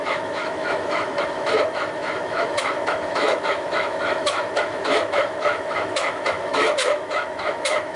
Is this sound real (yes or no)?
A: no